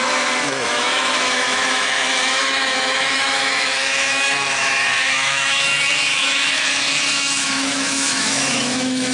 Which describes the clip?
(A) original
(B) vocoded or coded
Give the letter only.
B